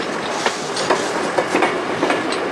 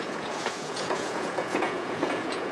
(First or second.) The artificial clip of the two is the second